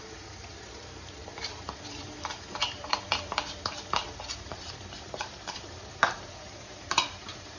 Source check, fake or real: fake